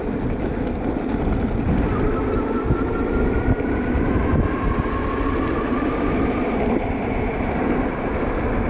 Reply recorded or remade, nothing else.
recorded